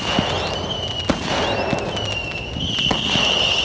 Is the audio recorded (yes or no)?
yes